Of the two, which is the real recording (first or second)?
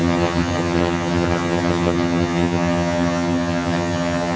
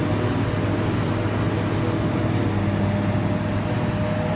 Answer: second